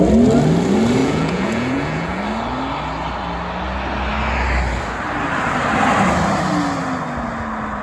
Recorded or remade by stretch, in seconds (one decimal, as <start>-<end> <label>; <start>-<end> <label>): 0.0-1.0 recorded; 1.0-2.2 remade; 2.2-7.8 recorded